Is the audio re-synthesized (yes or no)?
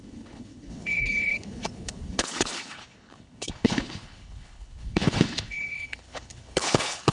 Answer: yes